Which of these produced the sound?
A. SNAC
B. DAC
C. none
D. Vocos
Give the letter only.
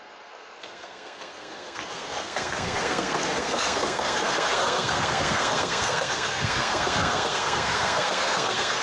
A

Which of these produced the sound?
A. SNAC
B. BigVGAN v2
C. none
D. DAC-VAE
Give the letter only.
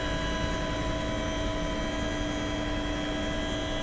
C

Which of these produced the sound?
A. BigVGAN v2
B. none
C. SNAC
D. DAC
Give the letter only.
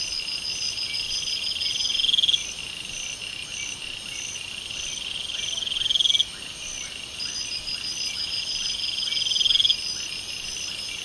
B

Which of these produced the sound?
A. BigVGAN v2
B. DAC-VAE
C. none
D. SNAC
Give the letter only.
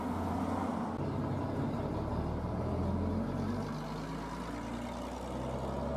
C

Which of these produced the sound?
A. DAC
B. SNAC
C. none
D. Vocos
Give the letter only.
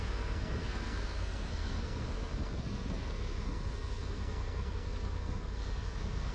B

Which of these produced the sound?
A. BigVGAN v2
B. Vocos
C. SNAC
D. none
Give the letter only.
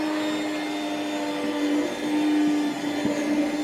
D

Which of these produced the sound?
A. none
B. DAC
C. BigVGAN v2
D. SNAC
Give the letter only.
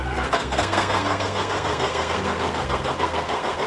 D